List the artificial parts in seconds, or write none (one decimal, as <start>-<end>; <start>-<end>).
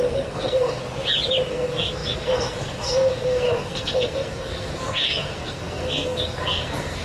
0.0-0.8; 1.5-7.0